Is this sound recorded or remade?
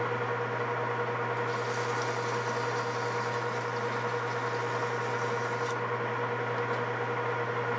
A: recorded